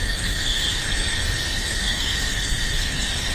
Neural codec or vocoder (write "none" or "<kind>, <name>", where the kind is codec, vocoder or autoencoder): codec, SNAC